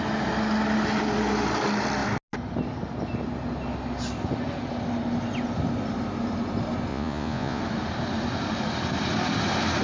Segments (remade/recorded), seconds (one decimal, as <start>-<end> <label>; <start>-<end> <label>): 0.0-6.9 recorded; 6.9-7.6 remade; 7.6-9.8 recorded